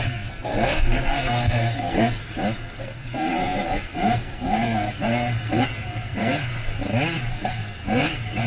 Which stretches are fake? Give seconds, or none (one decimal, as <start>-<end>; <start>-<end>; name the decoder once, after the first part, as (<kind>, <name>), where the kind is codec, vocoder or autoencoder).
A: 0.0-2.2 (codec, SNAC); 2.8-6.7; 7.3-8.5